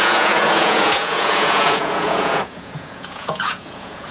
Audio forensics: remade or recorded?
remade